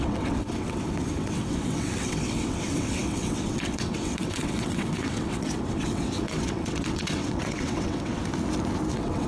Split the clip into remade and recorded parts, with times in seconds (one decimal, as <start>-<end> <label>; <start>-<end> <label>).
0.0-8.2 remade; 8.2-8.9 recorded; 8.9-9.3 remade